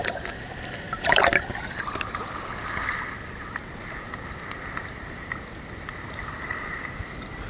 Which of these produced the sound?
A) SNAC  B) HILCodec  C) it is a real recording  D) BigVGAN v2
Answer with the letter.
C